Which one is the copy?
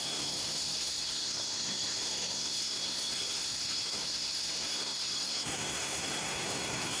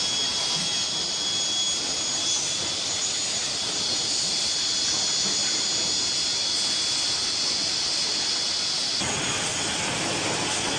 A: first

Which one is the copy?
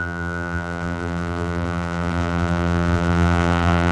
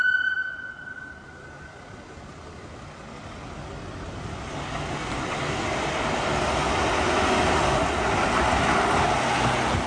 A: first